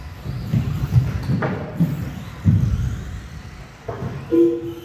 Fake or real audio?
real